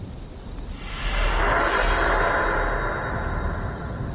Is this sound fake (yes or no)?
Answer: no